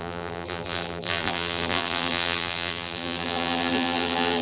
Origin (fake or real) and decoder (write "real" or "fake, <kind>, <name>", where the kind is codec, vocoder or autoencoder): fake, vocoder, BigVGAN v2